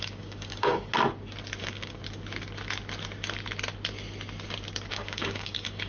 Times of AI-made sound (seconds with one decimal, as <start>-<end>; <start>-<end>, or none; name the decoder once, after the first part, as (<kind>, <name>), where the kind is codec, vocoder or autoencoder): 0.0-0.9 (codec, DAC); 1.6-2.0; 4.9-5.9